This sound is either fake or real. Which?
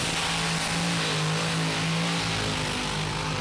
real